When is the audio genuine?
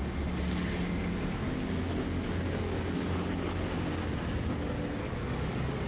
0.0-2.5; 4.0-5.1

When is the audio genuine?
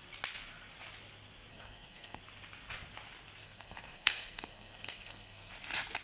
0.0-1.5; 2.2-3.4; 5.5-6.0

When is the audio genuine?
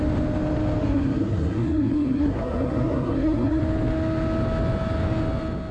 0.0-0.8; 3.6-5.7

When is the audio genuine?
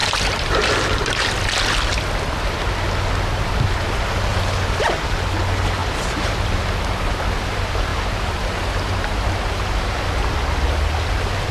1.3-5.8; 6.8-7.9; 10.0-11.5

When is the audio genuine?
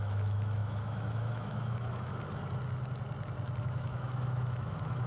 2.1-3.6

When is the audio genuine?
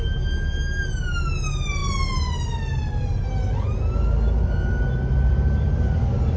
0.0-6.4